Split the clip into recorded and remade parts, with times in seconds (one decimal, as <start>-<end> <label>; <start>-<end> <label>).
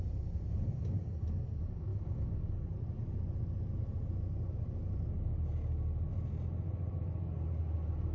0.0-8.1 recorded